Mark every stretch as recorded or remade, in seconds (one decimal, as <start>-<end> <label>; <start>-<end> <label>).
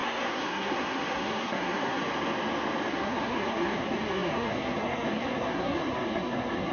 0.0-2.0 remade; 2.0-2.9 recorded; 2.9-6.7 remade